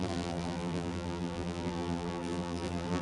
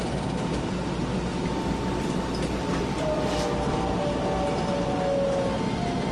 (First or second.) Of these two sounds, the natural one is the second